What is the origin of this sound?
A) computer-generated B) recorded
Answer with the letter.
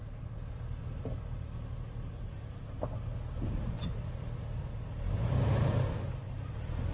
B